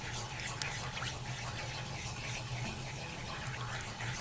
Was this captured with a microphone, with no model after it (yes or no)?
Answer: yes